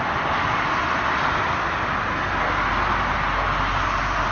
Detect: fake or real real